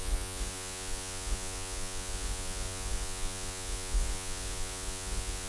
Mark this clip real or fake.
fake